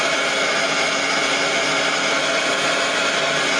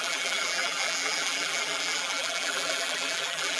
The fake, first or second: second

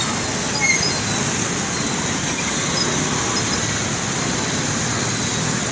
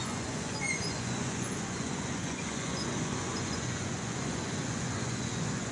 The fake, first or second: second